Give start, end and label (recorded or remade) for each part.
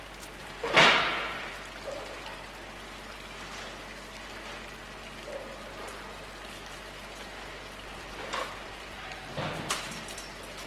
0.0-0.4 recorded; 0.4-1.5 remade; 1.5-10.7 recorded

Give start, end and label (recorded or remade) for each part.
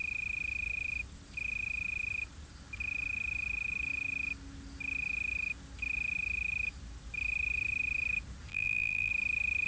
0.0-8.5 recorded; 8.5-9.1 remade; 9.1-9.7 recorded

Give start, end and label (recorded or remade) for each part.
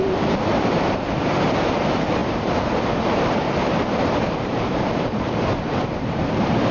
0.0-6.7 remade